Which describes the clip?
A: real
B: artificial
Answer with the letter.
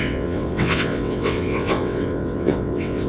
B